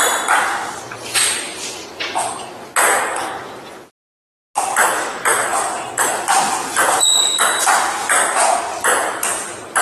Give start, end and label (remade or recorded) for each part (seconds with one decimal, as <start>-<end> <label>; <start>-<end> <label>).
0.0-5.5 recorded; 5.5-6.1 remade; 6.1-9.8 recorded